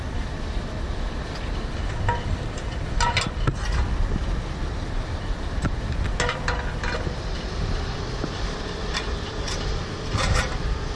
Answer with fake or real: real